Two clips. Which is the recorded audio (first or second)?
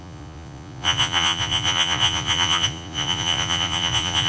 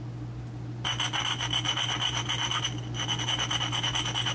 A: second